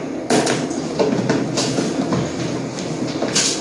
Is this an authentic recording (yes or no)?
yes